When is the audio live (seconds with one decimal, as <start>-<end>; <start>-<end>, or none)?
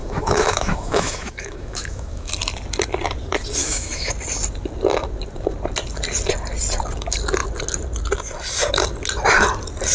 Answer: 2.3-3.6; 4.1-9.9